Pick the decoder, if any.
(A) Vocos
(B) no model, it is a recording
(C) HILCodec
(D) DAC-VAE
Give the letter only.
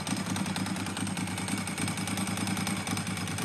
B